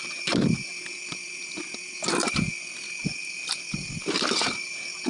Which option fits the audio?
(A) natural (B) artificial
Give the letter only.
A